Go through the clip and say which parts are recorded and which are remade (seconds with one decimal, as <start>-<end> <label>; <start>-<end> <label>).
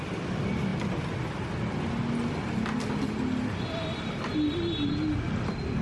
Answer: 0.0-5.8 recorded